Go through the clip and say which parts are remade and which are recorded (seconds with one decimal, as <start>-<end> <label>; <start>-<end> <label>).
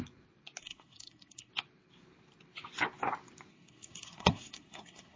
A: 0.0-0.6 recorded; 0.6-1.5 remade; 1.5-3.5 recorded; 3.5-5.2 remade